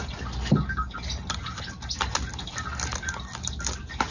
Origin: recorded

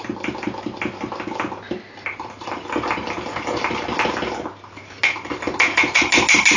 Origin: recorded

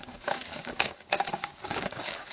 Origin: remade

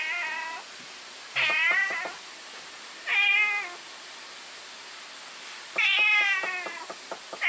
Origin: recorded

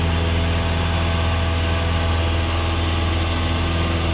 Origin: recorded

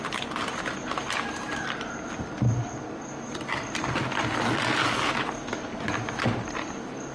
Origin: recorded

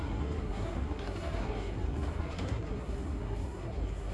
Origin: remade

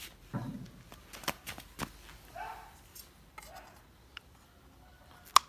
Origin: recorded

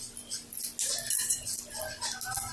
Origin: recorded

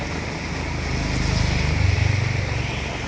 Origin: recorded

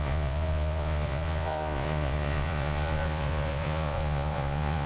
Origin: remade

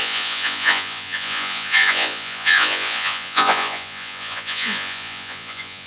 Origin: remade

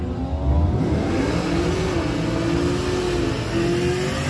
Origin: recorded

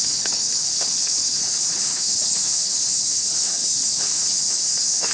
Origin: remade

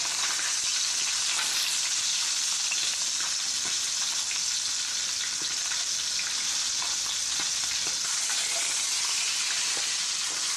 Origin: recorded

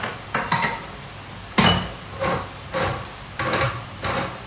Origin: recorded